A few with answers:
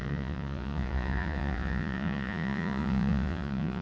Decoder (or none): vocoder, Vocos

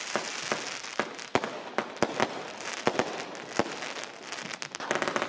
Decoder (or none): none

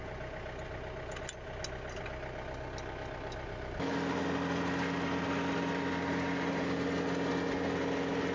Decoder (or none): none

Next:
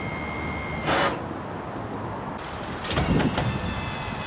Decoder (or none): none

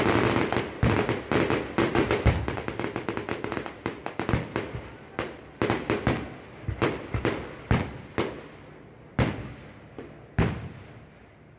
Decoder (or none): none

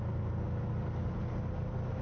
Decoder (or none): none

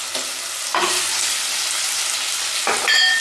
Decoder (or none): none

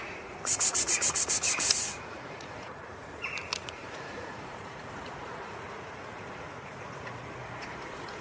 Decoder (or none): vocoder, Vocos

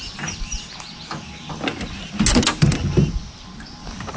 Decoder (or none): none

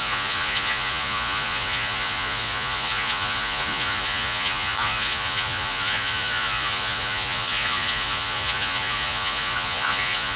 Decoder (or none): vocoder, Vocos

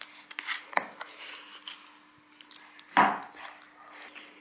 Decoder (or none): none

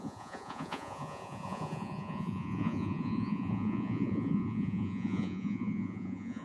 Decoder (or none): vocoder, Vocos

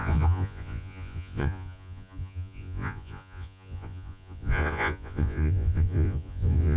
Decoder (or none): vocoder, Vocos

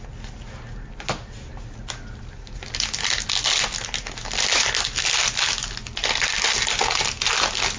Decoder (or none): none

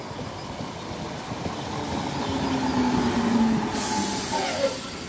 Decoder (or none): none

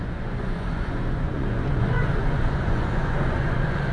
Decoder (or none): vocoder, Vocos